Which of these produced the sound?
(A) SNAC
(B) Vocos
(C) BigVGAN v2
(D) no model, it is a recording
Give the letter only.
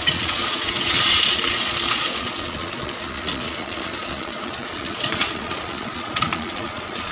B